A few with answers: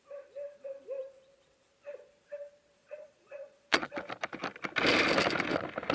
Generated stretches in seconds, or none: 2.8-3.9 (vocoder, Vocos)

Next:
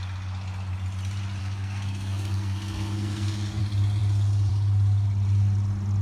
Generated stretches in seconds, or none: 1.4-3.6 (codec, SNAC)